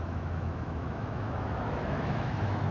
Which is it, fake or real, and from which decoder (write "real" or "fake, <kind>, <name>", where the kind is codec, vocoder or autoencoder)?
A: fake, autoencoder, DAC-VAE